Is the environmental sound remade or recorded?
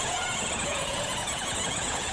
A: remade